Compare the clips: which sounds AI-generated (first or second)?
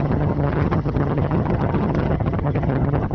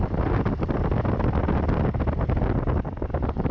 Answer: first